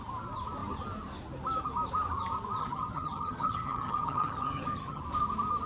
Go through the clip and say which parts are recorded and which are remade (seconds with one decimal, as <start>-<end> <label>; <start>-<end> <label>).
0.0-2.6 recorded; 2.6-5.0 remade; 5.0-5.7 recorded